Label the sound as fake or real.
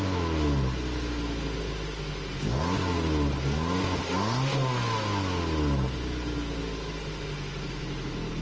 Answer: real